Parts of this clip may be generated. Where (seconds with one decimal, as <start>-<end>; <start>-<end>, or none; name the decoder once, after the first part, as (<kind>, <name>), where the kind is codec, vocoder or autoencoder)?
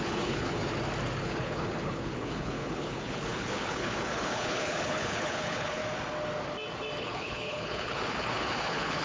0.0-0.6 (codec, HILCodec); 1.2-5.8; 7.0-9.0